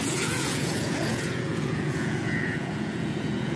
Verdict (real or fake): fake